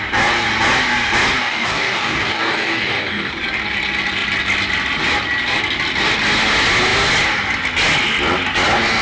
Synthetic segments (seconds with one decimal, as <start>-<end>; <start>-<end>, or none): 1.4-3.3